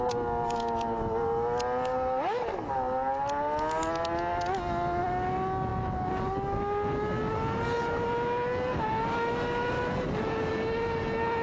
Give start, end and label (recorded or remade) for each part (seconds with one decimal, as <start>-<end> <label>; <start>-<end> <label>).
0.0-11.4 recorded